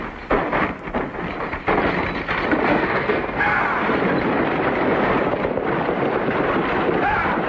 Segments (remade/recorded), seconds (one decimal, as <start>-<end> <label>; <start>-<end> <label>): 0.0-2.7 recorded; 2.7-3.6 remade; 3.6-7.5 recorded